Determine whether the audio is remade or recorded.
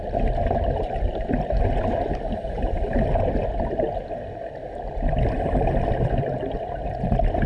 recorded